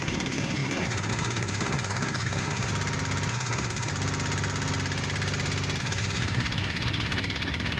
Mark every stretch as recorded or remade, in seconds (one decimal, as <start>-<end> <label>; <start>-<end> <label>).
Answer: 0.0-2.7 remade; 2.7-3.3 recorded; 3.3-3.9 remade; 3.9-5.8 recorded; 5.8-7.8 remade